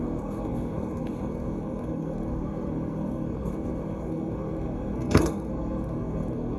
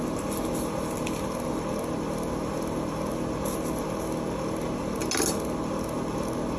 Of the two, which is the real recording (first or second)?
second